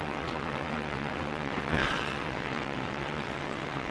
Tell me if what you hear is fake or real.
fake